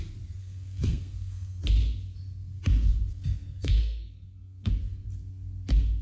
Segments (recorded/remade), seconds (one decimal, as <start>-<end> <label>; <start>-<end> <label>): 0.0-0.4 recorded; 0.4-1.6 remade; 1.6-3.1 recorded; 3.1-4.7 remade; 4.7-6.0 recorded